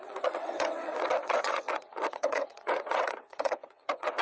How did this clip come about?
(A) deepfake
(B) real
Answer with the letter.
A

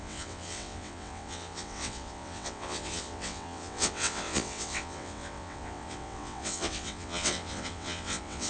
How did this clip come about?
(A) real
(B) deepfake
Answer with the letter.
B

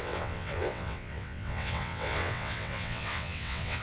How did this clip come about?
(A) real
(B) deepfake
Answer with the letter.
B